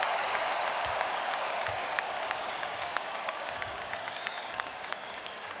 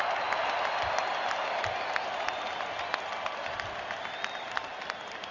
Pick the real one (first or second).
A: second